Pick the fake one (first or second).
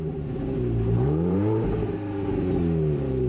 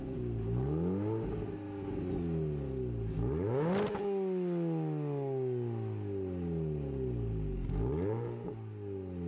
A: first